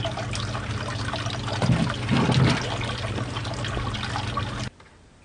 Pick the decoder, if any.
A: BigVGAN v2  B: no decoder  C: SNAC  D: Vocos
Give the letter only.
B